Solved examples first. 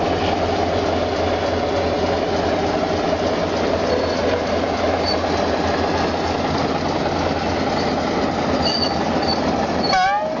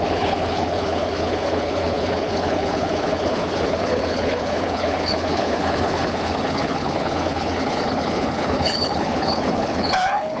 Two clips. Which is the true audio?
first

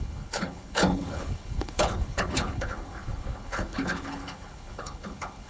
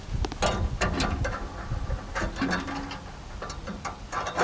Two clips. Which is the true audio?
second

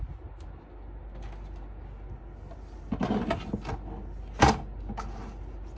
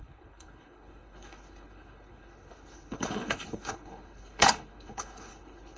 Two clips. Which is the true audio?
first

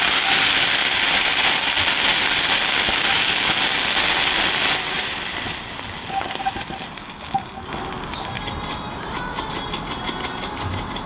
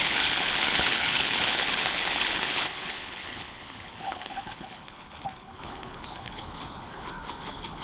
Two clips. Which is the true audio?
first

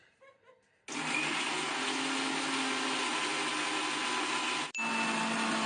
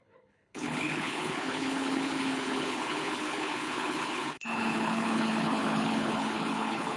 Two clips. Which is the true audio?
first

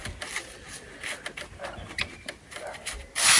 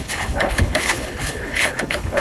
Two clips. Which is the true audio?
first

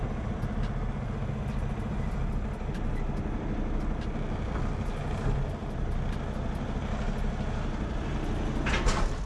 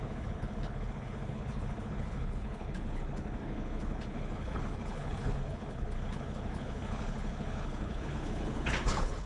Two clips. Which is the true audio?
first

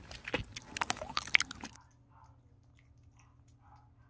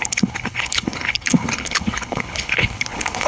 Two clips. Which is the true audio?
first